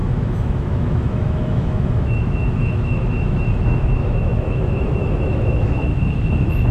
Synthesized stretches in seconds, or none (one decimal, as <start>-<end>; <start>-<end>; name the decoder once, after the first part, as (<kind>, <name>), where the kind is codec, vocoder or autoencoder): 0.0-6.7 (autoencoder, DAC-VAE)